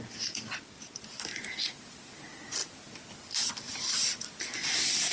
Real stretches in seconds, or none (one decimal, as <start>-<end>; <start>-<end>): 0.0-5.1